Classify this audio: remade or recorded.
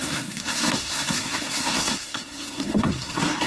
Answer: remade